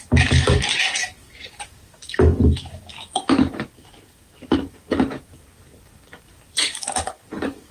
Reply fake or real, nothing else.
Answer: fake